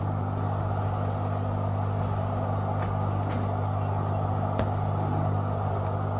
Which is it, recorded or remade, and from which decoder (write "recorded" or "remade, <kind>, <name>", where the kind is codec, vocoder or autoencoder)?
recorded